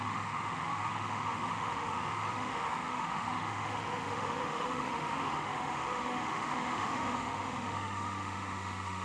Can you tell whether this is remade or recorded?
remade